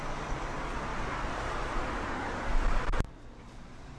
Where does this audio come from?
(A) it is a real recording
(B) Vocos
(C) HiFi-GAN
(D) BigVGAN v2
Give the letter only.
D